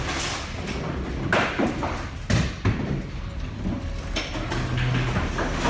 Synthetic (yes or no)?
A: no